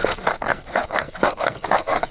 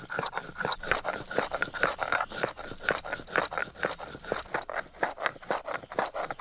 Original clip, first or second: second